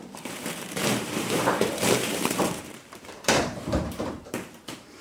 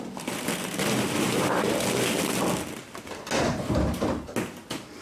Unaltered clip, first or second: second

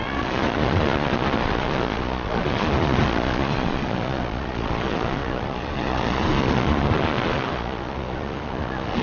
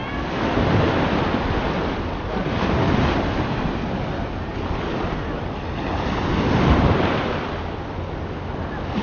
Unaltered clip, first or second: second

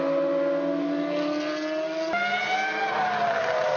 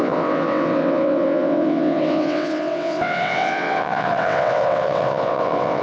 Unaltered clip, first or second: first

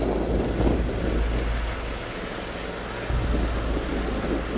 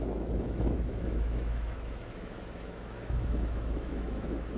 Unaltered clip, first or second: first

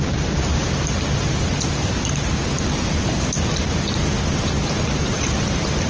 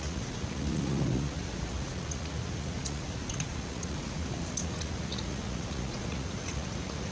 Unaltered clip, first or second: first